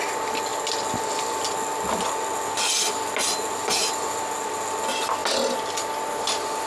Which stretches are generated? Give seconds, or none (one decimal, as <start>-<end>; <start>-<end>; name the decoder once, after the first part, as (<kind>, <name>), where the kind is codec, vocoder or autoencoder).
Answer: none